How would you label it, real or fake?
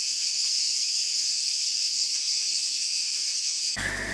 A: fake